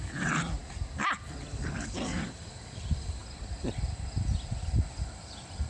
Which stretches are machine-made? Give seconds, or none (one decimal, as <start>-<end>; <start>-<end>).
0.0-0.6; 2.2-5.7